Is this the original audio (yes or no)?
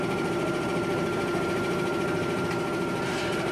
no